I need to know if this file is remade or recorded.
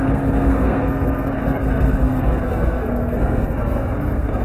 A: remade